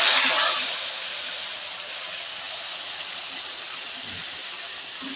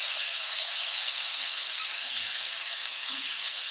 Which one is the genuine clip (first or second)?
first